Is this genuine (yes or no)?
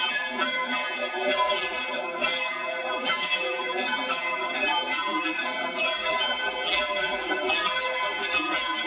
no